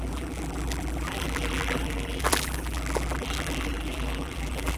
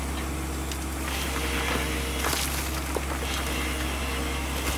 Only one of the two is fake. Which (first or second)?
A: first